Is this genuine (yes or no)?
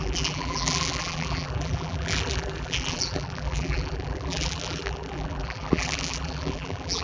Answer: no